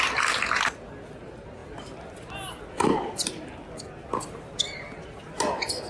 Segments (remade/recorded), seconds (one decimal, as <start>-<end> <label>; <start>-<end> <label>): 0.0-5.9 recorded